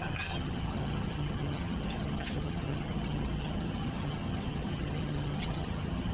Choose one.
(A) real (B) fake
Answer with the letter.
B